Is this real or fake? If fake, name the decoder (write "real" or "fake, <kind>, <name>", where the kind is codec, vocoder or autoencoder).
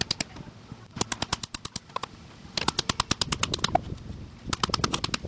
real